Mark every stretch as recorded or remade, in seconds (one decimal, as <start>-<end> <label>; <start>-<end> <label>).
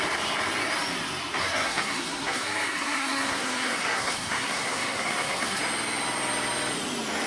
0.0-1.4 recorded; 1.4-5.6 remade; 5.6-7.3 recorded